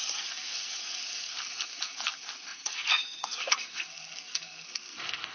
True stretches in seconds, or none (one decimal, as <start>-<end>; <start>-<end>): none